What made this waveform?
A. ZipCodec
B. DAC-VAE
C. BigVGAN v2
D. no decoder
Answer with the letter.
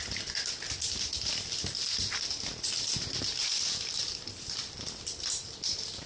D